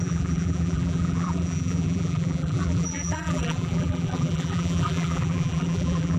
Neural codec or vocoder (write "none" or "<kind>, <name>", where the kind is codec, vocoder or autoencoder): vocoder, BigVGAN v2